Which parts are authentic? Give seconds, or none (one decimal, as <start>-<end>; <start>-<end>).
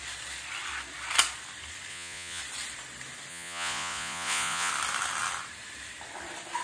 0.0-1.9; 2.4-3.3; 4.7-6.6